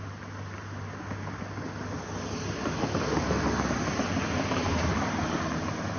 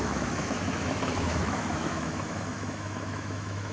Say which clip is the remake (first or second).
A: second